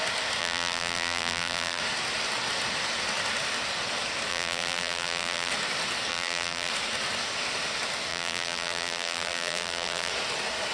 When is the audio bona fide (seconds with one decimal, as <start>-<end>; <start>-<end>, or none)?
0.0-0.4; 1.8-4.3; 5.5-6.1; 6.7-8.1; 10.1-10.7